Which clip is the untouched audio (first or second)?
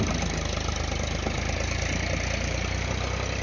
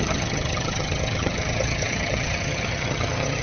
first